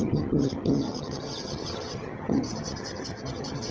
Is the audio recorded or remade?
remade